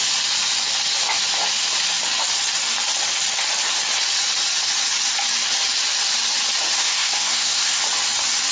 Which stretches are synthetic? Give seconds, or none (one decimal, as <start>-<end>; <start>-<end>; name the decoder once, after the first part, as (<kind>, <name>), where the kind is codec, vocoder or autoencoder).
6.8-7.8 (codec, SNAC)